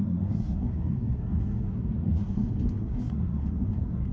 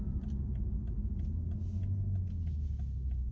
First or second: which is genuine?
second